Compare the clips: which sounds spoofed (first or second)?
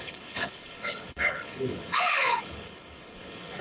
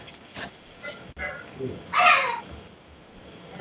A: first